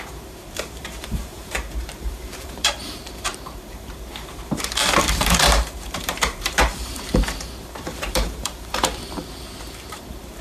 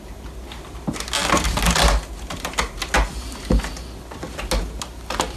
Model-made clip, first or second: first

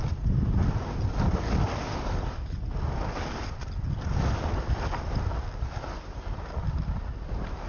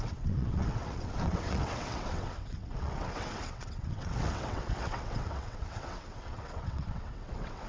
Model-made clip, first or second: second